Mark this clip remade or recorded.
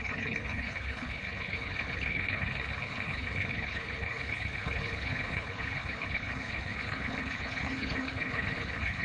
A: remade